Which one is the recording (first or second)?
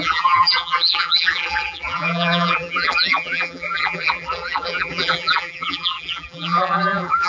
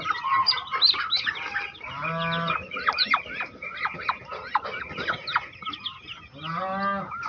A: second